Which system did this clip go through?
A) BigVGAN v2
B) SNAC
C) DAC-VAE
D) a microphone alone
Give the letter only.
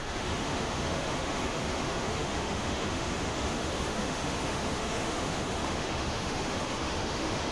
C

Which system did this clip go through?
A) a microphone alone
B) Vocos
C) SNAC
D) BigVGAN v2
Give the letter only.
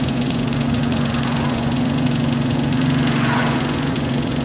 B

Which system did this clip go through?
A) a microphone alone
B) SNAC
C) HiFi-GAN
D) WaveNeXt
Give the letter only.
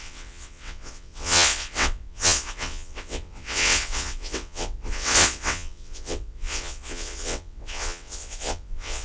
D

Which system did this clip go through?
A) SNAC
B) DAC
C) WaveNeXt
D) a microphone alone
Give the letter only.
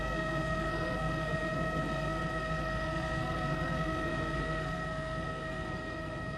A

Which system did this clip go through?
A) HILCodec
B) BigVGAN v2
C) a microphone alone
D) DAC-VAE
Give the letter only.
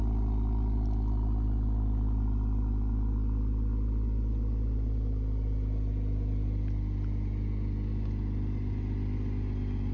C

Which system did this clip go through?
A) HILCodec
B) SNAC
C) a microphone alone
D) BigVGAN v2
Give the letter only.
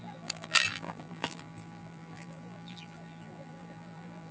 D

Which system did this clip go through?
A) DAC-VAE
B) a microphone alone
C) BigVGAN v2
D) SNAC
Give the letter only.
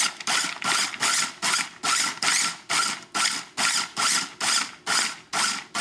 B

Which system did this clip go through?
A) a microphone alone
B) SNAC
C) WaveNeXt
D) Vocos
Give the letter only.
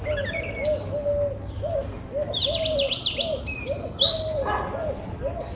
A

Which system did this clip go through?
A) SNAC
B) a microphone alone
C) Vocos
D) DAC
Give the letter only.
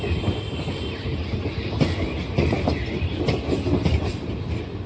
B